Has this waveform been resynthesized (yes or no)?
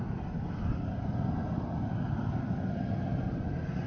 no